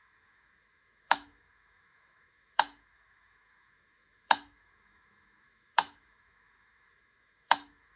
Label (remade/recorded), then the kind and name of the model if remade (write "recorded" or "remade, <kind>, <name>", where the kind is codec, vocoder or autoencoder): remade, autoencoder, DAC-VAE